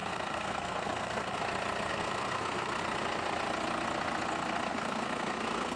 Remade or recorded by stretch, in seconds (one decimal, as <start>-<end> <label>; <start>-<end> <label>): 0.0-1.4 remade; 1.4-1.9 recorded; 1.9-2.8 remade; 2.8-4.7 recorded; 4.7-5.8 remade